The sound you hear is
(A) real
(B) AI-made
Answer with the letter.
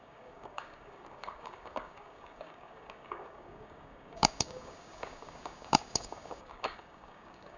B